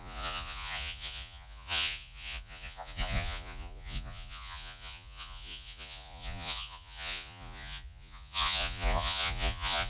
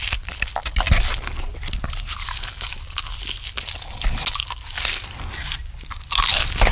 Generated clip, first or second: first